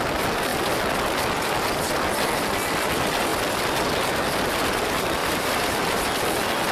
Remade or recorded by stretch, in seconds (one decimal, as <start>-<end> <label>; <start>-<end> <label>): 0.0-5.2 recorded; 5.2-6.1 remade; 6.1-6.7 recorded